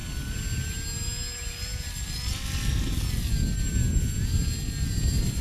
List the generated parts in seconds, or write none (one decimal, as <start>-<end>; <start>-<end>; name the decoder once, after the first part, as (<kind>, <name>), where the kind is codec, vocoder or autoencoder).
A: none